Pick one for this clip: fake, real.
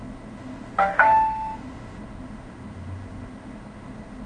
fake